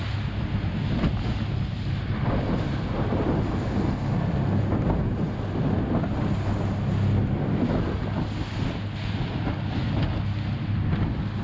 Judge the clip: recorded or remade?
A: recorded